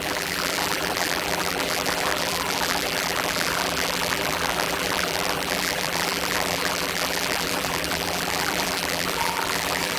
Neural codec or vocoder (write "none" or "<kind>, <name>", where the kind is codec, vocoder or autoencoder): vocoder, BigVGAN v2